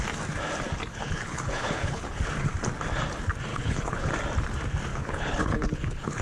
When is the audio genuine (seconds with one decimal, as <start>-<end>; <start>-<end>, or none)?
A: 0.0-0.9; 2.3-3.5; 4.1-4.9